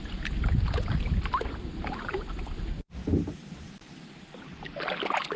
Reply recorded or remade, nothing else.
recorded